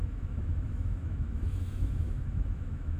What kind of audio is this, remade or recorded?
remade